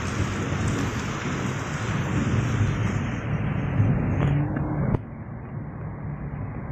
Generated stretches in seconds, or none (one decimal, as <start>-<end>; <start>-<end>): 2.8-3.9